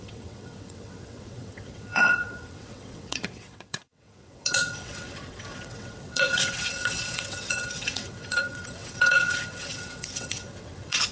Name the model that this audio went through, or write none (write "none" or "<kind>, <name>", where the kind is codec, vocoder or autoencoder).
vocoder, WaveNeXt